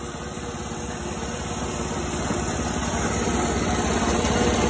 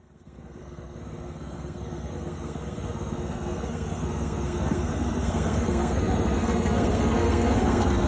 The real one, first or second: first